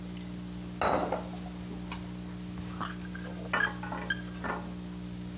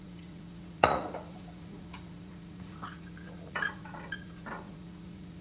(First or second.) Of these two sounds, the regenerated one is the second